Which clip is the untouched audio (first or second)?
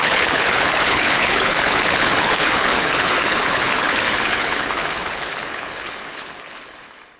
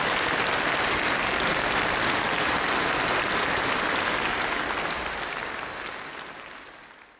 second